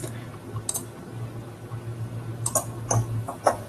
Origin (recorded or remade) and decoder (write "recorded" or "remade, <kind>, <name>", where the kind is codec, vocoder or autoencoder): recorded